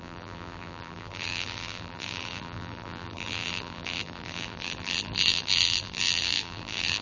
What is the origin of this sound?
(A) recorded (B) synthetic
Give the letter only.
B